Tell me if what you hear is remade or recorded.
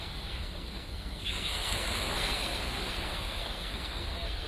remade